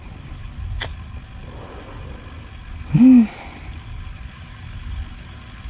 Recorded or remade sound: recorded